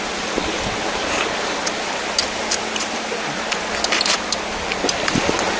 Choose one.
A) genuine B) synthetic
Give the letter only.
A